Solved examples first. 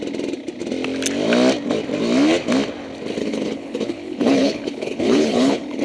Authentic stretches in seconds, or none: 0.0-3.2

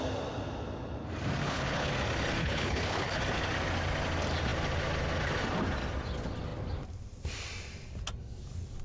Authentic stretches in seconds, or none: 0.0-1.4; 1.9-2.4; 3.2-8.8

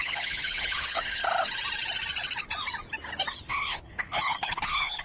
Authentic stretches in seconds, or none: 1.2-3.4

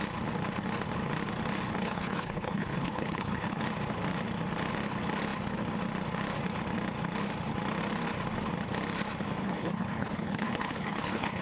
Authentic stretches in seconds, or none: 0.0-1.8; 3.6-9.4

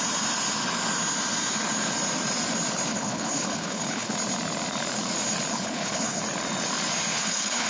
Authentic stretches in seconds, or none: 0.0-2.9; 4.1-5.5; 6.2-7.1

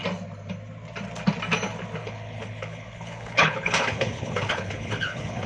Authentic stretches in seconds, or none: 0.0-2.0

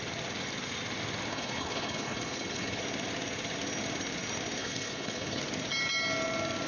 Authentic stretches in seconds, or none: 0.0-1.3; 2.8-4.6; 5.4-6.7

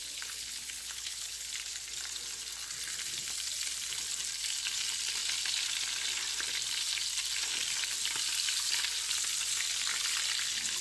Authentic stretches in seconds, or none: 1.5-10.8